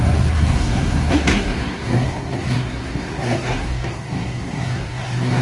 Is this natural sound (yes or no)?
no